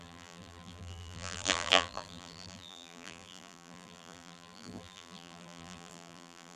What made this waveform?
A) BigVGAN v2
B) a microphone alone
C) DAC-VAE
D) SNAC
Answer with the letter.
A